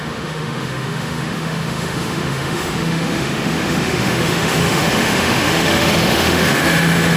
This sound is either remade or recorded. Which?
remade